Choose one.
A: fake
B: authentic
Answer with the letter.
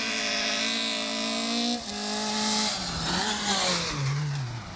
B